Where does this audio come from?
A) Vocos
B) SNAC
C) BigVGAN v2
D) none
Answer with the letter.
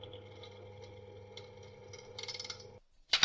D